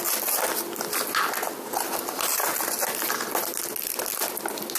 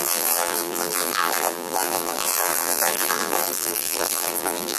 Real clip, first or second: first